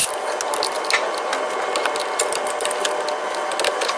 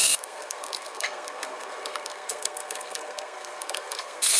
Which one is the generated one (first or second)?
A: second